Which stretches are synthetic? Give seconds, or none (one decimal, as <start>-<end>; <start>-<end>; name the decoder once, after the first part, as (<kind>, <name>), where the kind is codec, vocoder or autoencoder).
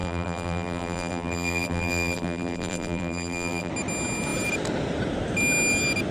0.0-3.7 (vocoder, BigVGAN v2)